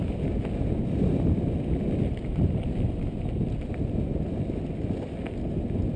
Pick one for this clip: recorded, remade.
recorded